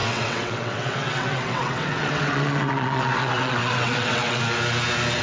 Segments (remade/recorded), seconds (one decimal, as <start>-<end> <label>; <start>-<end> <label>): 0.0-4.4 remade; 4.4-5.2 recorded